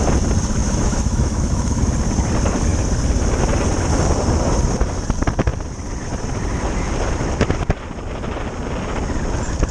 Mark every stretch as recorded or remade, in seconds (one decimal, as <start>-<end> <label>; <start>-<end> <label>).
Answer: 0.0-0.6 recorded; 0.6-1.8 remade; 1.8-9.7 recorded